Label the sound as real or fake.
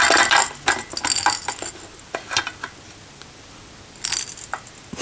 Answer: real